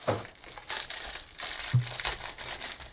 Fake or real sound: real